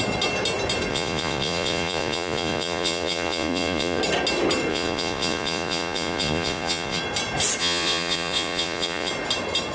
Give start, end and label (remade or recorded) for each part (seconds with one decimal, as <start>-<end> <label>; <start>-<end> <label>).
0.0-0.9 recorded; 0.9-4.0 remade; 4.0-4.7 recorded; 4.7-7.0 remade; 7.0-7.6 recorded; 7.6-9.1 remade; 9.1-9.7 recorded